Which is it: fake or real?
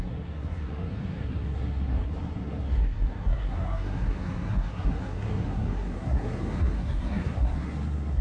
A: fake